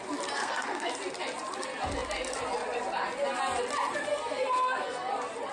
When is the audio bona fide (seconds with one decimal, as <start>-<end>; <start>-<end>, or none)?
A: 0.0-0.4; 0.9-4.1; 5.1-5.5